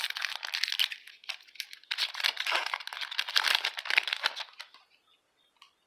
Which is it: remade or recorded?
recorded